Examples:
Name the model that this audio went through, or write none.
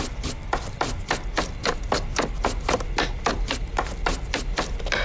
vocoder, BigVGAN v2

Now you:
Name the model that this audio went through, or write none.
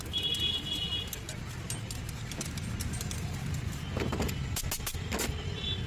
none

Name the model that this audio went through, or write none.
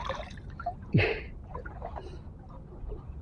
none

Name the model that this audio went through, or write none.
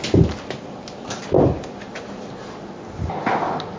none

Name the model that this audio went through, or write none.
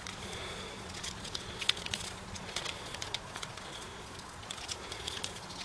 vocoder, Vocos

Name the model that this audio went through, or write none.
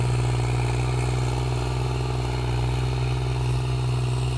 none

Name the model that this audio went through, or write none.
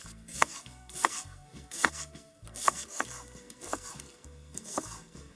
codec, SNAC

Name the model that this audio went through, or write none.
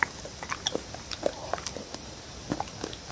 none